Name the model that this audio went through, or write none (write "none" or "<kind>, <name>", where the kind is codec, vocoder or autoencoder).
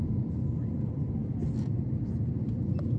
none